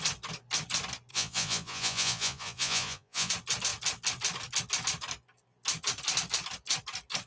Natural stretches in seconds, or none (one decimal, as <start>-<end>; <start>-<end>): 0.0-1.1; 3.3-7.3